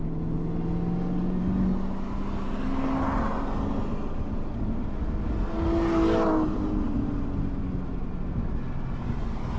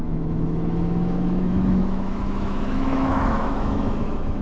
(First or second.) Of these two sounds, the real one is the first